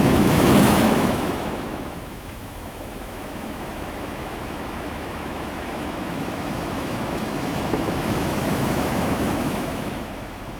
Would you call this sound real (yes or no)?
no